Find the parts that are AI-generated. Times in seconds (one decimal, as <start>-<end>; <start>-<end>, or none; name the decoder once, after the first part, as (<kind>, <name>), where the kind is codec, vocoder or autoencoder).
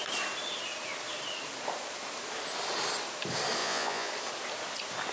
3.6-4.1 (vocoder, Vocos)